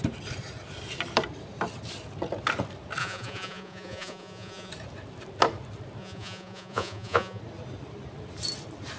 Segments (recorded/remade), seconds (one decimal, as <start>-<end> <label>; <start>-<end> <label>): 0.0-3.0 recorded; 3.0-4.7 remade; 4.7-6.0 recorded; 6.0-7.4 remade; 7.4-9.0 recorded